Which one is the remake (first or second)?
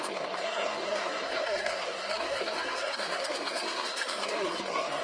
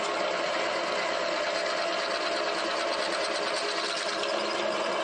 first